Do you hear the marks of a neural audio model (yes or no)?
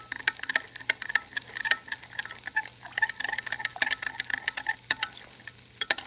no